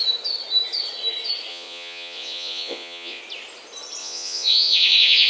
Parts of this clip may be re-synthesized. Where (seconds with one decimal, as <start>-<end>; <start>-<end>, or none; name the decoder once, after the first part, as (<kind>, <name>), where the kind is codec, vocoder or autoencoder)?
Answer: 1.5-3.2 (vocoder, Vocos); 4.0-5.3